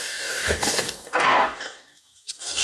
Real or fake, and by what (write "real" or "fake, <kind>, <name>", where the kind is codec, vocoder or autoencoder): fake, codec, DAC